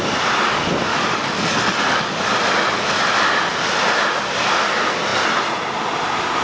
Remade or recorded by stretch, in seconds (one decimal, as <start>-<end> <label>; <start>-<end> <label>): 0.0-0.9 recorded; 0.9-2.2 remade; 2.2-6.4 recorded